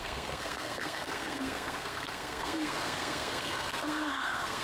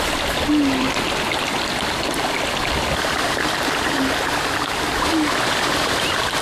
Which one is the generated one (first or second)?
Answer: first